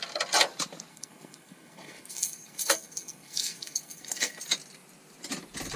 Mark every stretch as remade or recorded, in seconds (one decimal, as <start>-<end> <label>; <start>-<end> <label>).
0.0-0.9 recorded; 0.9-4.4 remade; 4.4-5.8 recorded